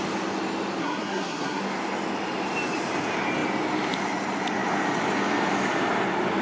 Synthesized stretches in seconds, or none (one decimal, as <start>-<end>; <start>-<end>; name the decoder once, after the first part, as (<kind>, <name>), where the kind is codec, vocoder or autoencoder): 0.8-1.6 (codec, SNAC)